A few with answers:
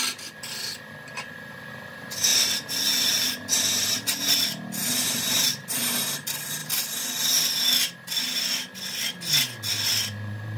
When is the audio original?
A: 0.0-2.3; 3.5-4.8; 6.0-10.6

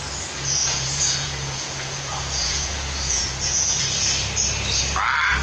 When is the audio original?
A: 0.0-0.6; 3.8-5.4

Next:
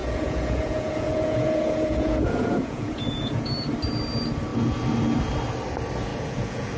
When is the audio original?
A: 3.5-6.1